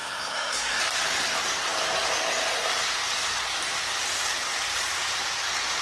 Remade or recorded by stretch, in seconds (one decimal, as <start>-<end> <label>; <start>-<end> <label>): 0.0-0.8 remade; 0.8-5.8 recorded